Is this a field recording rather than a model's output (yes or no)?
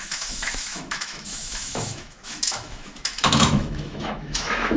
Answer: no